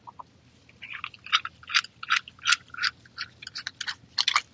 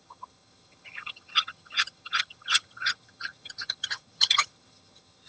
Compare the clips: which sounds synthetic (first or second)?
second